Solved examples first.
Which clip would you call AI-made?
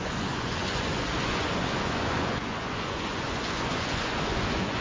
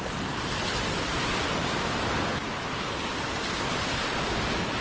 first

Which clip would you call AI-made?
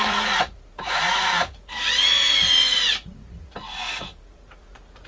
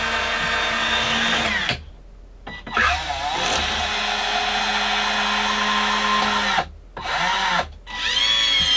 first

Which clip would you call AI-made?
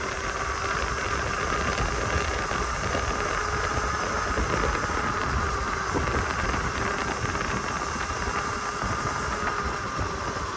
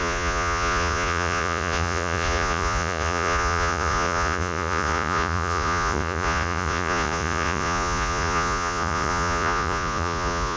second